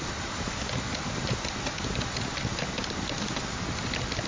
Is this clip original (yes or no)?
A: yes